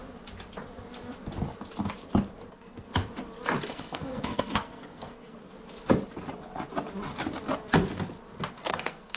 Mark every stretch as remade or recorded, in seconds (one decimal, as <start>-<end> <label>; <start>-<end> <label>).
0.0-2.5 recorded; 2.5-2.9 remade; 2.9-3.7 recorded; 3.7-5.5 remade; 5.5-8.5 recorded; 8.5-9.2 remade